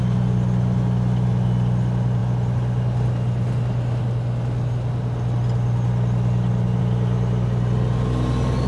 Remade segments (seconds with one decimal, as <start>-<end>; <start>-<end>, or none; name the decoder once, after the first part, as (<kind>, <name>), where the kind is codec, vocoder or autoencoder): none